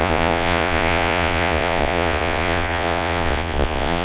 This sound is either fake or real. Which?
fake